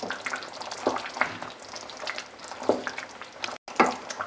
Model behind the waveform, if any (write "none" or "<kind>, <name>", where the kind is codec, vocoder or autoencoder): none